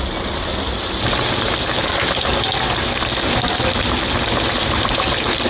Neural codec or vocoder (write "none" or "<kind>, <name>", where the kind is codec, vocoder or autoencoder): none